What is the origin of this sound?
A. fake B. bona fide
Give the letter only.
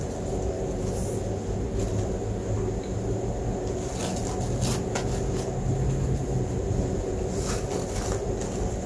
B